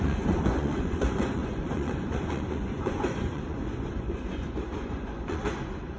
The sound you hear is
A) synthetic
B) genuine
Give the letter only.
A